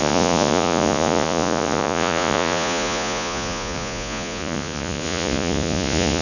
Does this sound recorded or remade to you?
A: remade